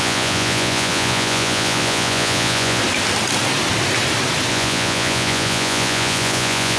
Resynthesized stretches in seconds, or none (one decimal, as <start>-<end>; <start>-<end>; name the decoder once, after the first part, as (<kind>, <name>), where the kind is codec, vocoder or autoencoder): 0.0-2.8 (vocoder, Vocos); 4.5-6.8